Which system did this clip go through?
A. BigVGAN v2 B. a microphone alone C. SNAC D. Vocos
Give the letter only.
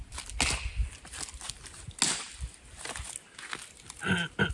B